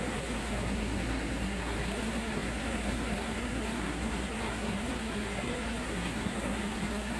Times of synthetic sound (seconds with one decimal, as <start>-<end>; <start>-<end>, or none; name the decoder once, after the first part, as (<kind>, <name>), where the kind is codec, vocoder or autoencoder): 0.0-7.2 (codec, SNAC)